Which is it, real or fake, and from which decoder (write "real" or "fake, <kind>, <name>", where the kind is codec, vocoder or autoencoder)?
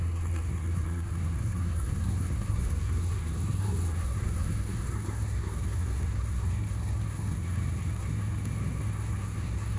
fake, codec, SNAC